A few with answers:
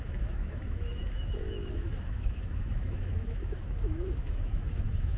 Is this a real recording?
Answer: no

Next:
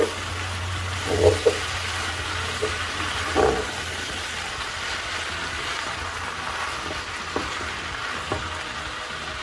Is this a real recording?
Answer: yes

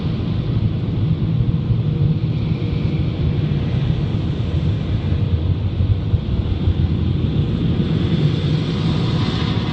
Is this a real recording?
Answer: yes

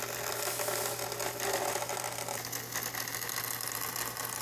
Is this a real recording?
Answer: yes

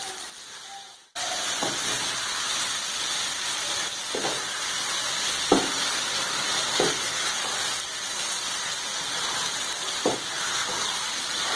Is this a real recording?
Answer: yes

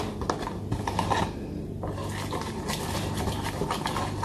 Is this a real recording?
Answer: yes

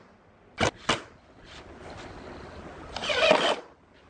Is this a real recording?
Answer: yes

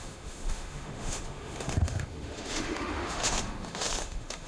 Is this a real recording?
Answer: no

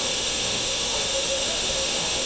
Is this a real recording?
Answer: no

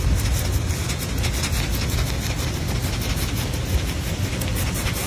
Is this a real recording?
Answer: yes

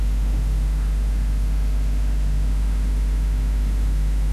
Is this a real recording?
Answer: no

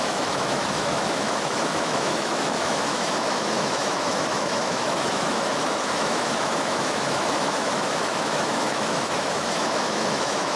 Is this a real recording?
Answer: no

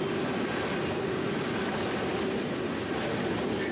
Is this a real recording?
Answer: yes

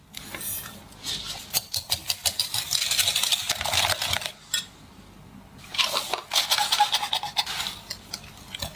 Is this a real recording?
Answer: yes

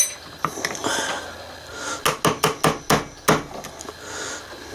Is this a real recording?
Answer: yes